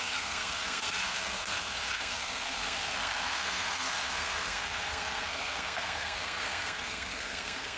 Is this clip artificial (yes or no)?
yes